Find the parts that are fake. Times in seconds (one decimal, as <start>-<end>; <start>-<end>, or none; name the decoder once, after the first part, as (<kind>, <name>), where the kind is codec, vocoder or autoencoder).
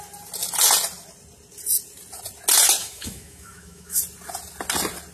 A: 2.8-4.0 (autoencoder, DAC-VAE)